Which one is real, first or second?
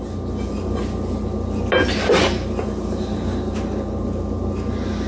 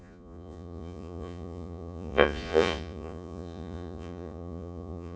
first